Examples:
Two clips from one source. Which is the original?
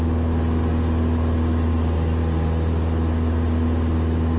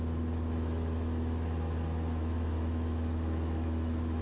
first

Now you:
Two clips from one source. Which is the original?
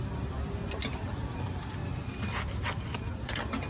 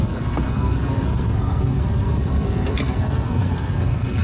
first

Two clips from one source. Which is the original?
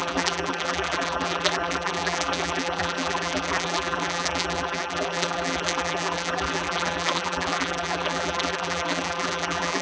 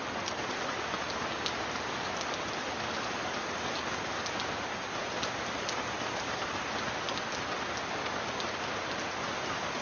second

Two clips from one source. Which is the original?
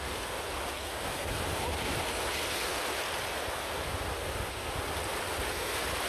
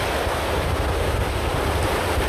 first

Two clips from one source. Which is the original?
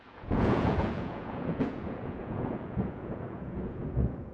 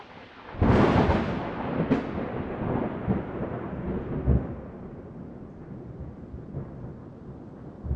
second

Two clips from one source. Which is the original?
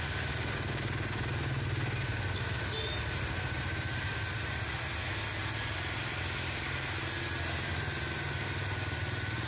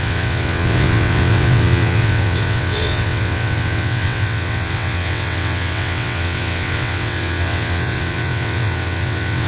first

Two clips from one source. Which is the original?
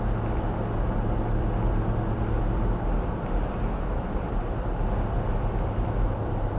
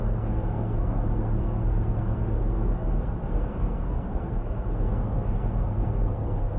first